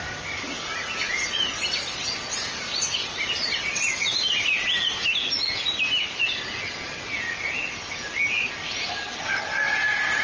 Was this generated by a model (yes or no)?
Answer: no